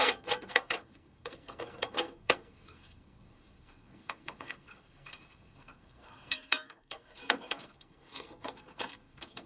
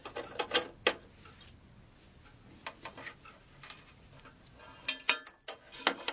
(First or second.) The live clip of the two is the second